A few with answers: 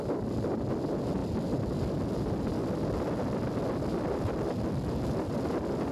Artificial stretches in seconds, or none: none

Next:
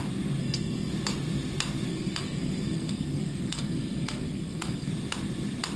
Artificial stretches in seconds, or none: 0.4-0.9 (codec, SNAC); 1.9-4.9

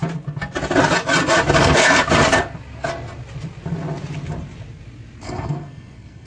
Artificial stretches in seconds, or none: 1.6-2.0 (codec, SNAC); 5.2-6.3